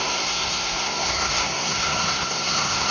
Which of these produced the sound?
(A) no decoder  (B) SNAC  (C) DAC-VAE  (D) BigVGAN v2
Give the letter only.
B